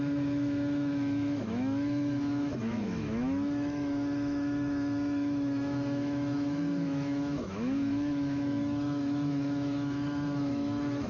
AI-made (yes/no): yes